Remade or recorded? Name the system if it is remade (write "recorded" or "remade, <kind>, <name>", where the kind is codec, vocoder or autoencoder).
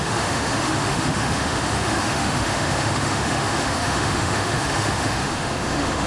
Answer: remade, autoencoder, DAC-VAE